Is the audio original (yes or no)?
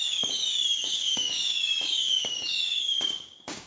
no